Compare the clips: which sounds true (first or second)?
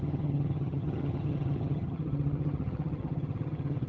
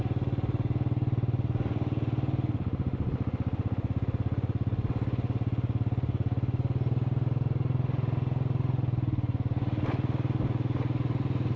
second